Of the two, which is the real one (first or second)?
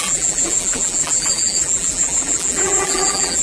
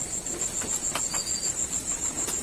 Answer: second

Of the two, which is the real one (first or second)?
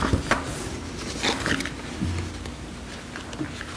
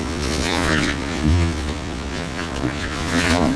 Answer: first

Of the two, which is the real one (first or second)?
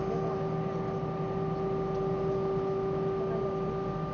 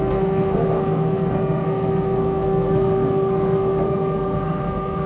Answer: first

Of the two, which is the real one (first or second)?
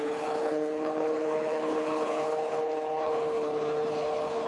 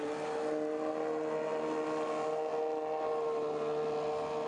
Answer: second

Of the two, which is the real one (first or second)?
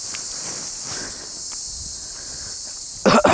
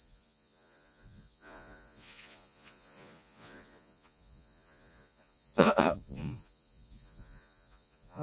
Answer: first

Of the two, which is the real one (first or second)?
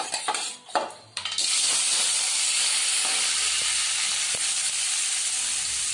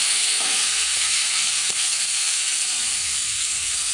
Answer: first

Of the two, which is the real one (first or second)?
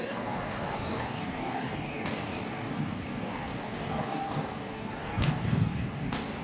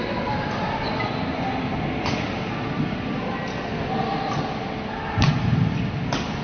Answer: second